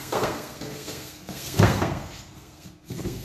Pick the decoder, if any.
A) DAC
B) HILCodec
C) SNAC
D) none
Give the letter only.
C